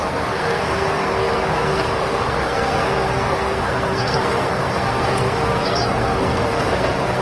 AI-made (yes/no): yes